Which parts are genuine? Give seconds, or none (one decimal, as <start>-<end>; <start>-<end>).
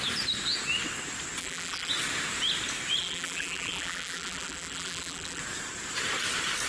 0.0-1.4; 1.9-3.0; 5.4-6.7